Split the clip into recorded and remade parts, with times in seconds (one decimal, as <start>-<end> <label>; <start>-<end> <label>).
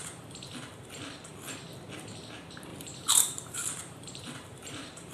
0.0-2.7 recorded; 2.7-5.1 remade